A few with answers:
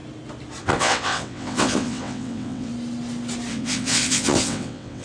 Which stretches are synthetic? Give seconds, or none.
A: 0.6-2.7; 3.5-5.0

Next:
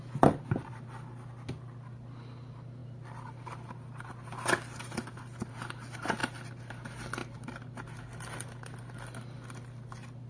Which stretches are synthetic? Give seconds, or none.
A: none

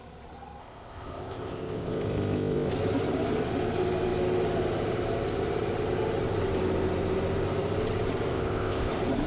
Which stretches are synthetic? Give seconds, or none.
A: 0.6-2.7; 8.3-8.9

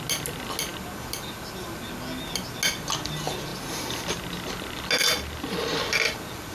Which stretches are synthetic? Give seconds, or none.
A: none